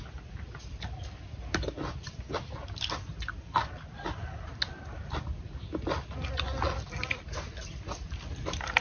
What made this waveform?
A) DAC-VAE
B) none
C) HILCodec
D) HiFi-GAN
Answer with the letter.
B